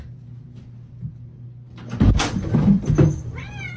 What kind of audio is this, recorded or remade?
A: remade